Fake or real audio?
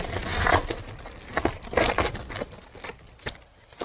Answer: real